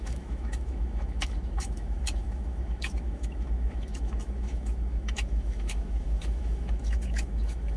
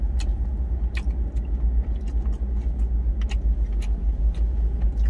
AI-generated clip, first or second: first